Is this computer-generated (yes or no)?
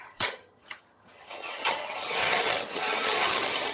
yes